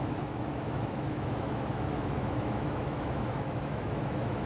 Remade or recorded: remade